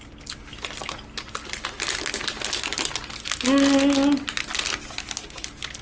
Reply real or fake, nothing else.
real